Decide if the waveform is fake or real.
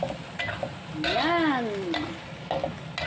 real